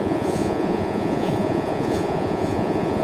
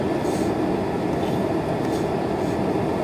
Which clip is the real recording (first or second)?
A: second